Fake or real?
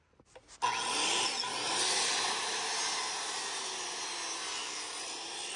real